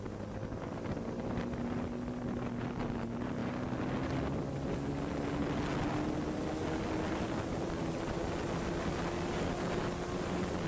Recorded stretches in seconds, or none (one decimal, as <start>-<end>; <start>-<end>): 0.0-10.7